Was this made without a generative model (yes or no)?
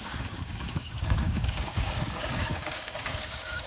no